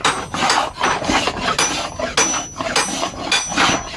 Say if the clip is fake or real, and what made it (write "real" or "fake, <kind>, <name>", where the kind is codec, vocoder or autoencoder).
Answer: real